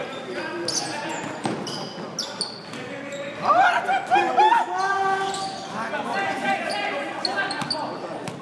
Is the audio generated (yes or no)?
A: no